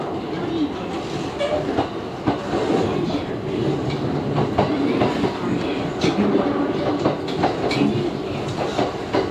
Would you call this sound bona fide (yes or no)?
yes